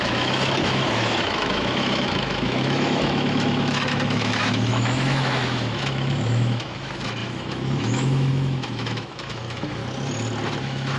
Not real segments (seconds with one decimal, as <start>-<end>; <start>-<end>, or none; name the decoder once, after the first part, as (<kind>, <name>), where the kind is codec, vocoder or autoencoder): 0.0-9.8 (autoencoder, DAC-VAE); 10.6-11.0